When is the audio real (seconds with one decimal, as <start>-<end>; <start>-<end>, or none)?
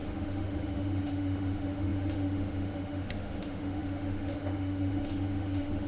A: none